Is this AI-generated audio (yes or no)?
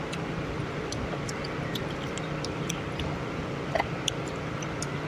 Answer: no